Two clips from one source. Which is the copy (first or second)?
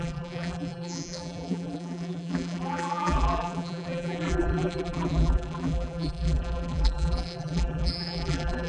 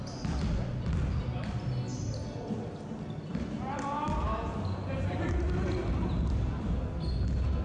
first